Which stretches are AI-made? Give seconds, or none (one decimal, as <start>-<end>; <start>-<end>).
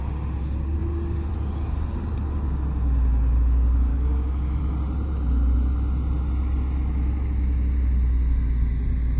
3.9-4.6